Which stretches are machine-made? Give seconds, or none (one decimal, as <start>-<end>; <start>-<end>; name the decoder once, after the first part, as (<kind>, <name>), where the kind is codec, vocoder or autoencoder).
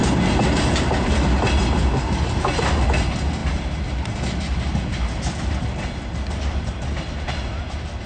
none